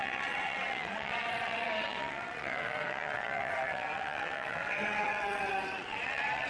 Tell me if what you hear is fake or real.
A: fake